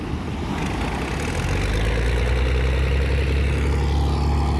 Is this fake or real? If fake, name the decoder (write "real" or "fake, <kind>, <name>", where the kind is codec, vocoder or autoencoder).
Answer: real